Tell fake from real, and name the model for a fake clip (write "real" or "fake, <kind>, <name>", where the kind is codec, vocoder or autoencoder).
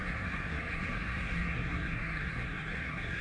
fake, codec, SNAC